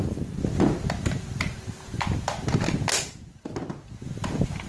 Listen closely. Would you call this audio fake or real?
real